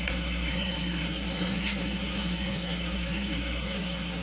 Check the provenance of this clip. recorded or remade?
remade